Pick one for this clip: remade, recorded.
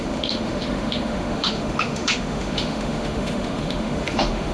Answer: remade